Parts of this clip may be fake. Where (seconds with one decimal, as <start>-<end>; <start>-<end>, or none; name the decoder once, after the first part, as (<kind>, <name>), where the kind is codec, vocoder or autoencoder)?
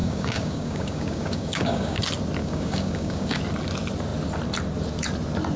0.0-2.0 (codec, DAC); 2.4-3.4